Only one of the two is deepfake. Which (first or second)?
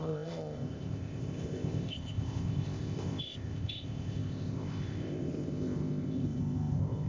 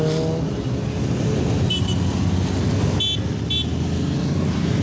first